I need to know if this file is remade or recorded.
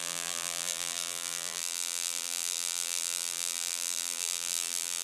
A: remade